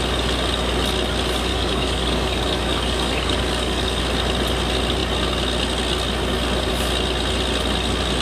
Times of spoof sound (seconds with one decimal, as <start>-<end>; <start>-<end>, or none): 1.5-4.0